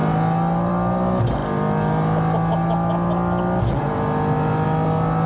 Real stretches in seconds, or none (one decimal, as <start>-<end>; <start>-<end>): 0.0-5.3

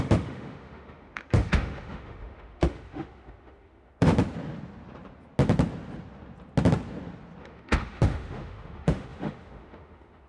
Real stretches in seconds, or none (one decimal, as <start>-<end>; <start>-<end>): 4.1-7.4

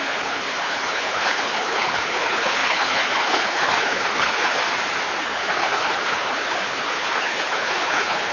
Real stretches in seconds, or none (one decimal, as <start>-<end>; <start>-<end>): 4.6-5.2

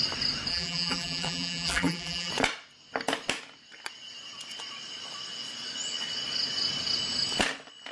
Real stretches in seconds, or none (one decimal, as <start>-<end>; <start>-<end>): 0.0-0.5; 2.3-7.9

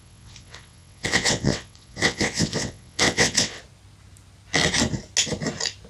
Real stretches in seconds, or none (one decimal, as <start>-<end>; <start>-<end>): 3.6-5.9